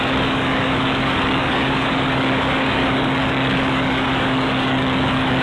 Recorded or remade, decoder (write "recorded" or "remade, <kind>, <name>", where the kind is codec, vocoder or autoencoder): remade, codec, DAC